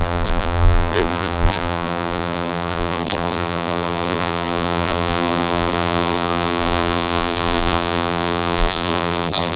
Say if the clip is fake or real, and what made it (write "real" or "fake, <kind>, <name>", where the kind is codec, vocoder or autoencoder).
fake, vocoder, BigVGAN v2